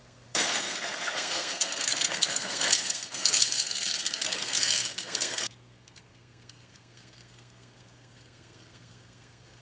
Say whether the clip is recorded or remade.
remade